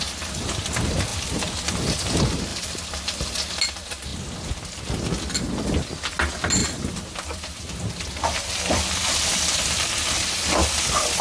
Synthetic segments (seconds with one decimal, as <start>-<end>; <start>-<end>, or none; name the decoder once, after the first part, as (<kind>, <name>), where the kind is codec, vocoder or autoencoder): 1.1-1.7 (vocoder, BigVGAN v2); 2.5-3.6; 4.1-4.8; 6.6-9.9